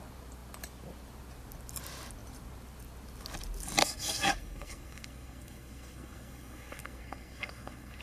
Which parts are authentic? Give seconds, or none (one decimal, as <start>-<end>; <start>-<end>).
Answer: 0.0-3.8

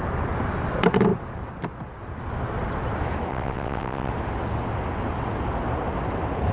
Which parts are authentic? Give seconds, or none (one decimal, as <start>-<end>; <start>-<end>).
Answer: 0.0-3.3; 4.1-6.5

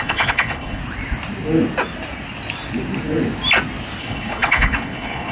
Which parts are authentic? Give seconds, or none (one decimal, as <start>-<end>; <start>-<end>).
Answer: 0.8-4.0

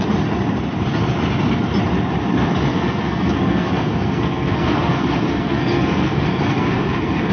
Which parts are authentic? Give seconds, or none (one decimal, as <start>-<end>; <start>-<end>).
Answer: 0.0-2.7

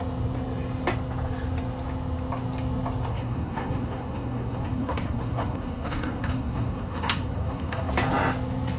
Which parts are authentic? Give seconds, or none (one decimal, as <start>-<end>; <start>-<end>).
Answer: 0.0-3.1; 7.9-8.8

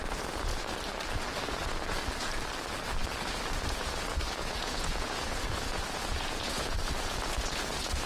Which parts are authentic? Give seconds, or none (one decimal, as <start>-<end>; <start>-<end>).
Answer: 0.5-1.4; 2.0-3.5

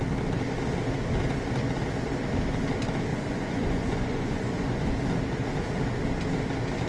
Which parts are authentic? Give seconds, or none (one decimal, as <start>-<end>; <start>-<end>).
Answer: 0.0-3.1; 4.9-6.9

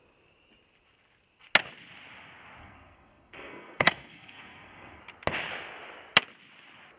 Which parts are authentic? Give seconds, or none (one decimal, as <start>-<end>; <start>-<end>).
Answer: 0.0-2.6; 5.0-7.0